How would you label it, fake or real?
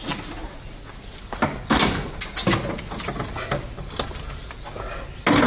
real